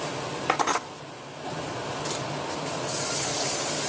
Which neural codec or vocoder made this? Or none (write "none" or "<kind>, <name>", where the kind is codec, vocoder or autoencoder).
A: none